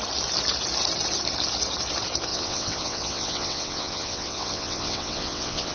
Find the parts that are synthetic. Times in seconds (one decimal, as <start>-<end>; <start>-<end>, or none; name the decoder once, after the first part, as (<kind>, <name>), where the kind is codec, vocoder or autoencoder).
2.3-5.7 (vocoder, WaveNeXt)

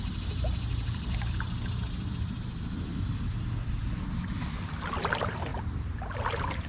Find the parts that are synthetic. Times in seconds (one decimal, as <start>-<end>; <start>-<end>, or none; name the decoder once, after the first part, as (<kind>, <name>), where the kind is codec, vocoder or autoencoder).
none

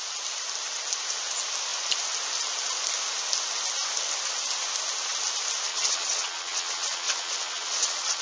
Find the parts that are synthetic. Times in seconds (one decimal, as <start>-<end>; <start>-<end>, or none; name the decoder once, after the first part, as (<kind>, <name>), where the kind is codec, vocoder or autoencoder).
5.7-8.2 (vocoder, WaveNeXt)

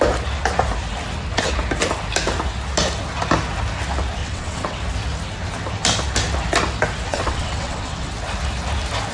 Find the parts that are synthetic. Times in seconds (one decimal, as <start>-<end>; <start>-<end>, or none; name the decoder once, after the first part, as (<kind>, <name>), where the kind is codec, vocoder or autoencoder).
4.2-4.8 (vocoder, WaveNeXt); 7.1-8.1

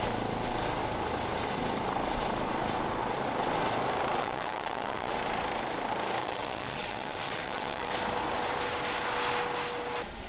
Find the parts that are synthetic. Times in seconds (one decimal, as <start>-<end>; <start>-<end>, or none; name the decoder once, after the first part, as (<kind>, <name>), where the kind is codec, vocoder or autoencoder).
4.2-5.1 (vocoder, WaveNeXt); 6.2-7.9

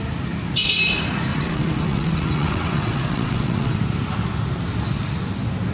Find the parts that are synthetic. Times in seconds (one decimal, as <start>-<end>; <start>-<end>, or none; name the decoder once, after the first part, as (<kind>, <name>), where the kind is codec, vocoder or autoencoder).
1.3-3.8 (vocoder, WaveNeXt)